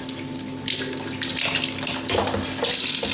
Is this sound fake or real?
real